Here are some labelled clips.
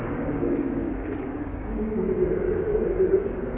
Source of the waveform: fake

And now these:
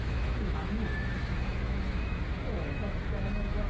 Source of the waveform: fake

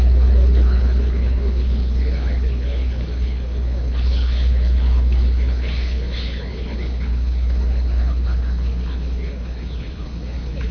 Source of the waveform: fake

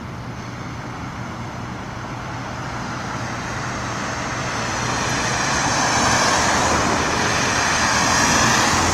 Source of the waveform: real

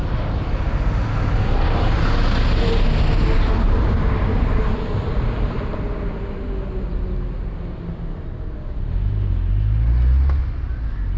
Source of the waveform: real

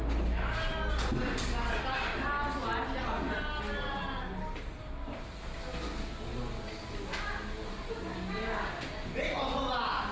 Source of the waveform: real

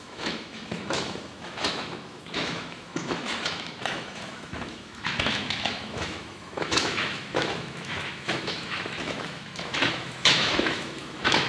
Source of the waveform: fake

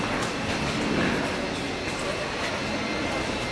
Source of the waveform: real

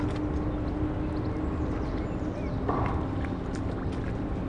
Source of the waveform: real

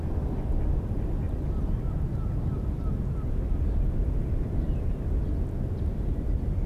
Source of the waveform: real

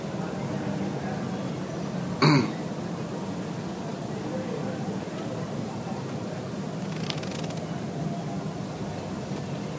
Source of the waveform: real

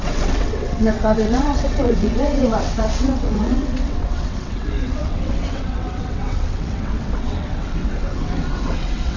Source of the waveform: fake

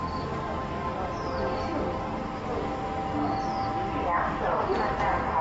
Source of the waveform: real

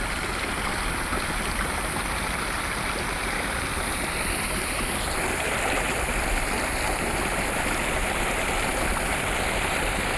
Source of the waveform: real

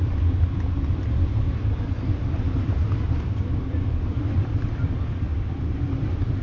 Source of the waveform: fake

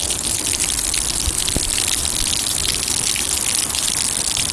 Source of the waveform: real